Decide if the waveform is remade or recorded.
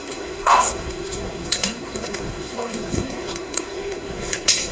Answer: remade